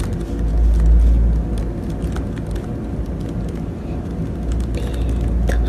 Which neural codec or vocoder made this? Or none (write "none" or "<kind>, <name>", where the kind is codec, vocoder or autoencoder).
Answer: none